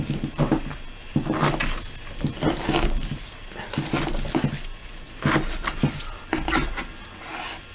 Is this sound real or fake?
real